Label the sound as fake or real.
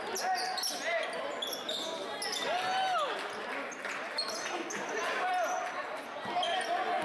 real